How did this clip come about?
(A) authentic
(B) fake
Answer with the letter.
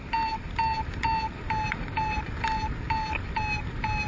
A